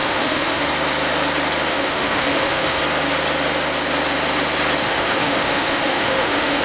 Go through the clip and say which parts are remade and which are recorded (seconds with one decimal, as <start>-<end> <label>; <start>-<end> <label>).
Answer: 0.0-0.7 remade; 0.7-1.7 recorded; 1.7-2.8 remade; 2.8-4.8 recorded; 4.8-6.6 remade